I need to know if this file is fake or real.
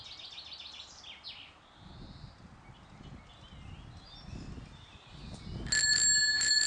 real